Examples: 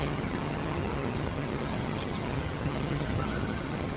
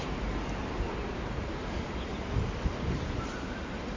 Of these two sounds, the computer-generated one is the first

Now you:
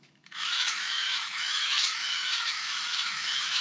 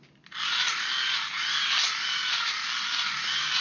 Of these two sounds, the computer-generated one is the first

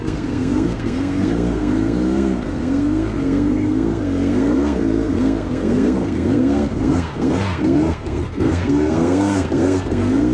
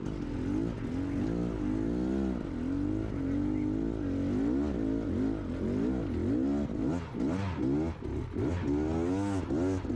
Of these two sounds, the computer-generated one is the first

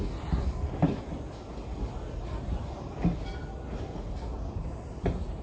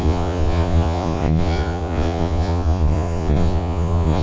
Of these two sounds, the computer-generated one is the second